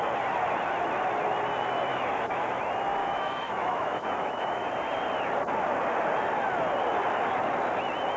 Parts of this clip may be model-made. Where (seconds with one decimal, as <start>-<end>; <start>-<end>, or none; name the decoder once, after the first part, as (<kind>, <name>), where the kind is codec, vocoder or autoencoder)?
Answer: 1.9-2.5 (autoencoder, DAC-VAE); 3.0-4.7